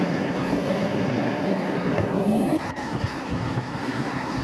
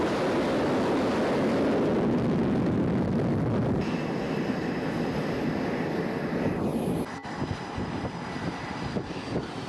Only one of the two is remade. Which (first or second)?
first